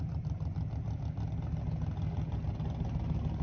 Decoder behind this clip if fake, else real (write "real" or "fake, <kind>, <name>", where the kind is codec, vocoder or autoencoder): real